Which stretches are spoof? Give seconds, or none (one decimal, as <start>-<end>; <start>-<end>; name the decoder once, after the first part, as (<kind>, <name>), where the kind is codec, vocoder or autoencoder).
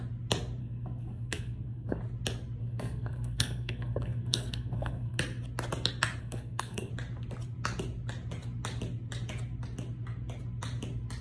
0.6-2.0 (codec, SNAC); 2.6-5.2; 6.2-6.9